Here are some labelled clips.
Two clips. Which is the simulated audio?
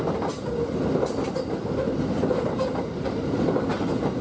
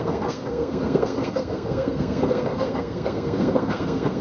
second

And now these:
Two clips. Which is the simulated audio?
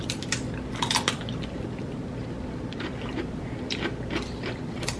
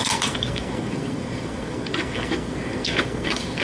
second